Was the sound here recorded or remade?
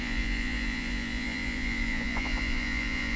remade